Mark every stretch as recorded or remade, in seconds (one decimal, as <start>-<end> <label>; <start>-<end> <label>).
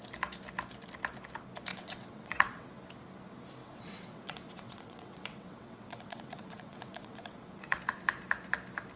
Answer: 0.0-1.7 recorded; 1.7-2.8 remade; 2.8-3.6 recorded; 3.6-7.8 remade; 7.8-9.0 recorded